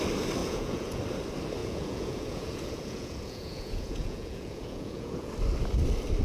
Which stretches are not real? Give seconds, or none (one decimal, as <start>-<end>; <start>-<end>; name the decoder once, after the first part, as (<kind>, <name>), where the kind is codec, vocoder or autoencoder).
0.4-1.0 (vocoder, Vocos); 1.6-5.3